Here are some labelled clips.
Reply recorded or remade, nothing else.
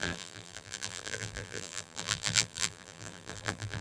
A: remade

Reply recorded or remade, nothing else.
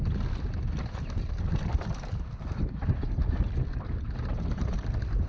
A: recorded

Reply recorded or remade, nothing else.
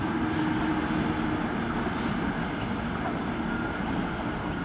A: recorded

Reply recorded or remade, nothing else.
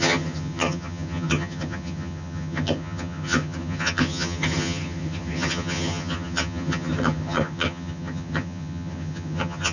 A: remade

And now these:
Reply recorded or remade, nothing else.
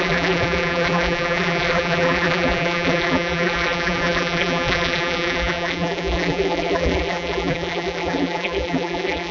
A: remade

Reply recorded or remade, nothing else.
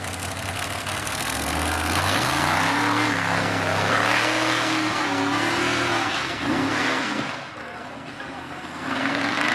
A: remade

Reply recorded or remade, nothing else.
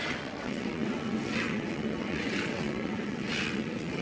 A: remade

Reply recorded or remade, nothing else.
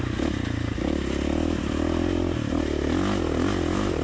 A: recorded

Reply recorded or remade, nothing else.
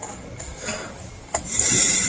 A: recorded